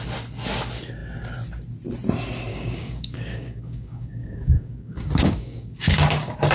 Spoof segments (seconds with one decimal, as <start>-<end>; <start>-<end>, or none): 2.5-6.5